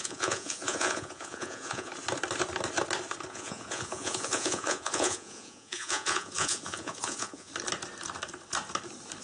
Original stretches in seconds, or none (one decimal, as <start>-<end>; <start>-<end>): 1.9-3.3; 7.5-9.2